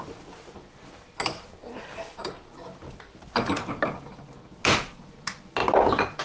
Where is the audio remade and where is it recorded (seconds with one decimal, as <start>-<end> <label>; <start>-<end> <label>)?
0.0-6.2 recorded

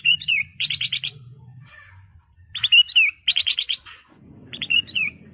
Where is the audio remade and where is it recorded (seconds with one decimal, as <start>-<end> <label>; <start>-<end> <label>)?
0.0-2.1 remade; 2.1-3.3 recorded; 3.3-5.3 remade